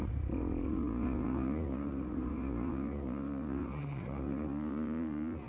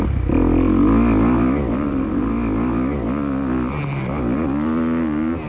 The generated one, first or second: first